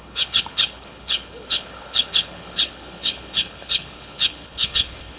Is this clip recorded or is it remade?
remade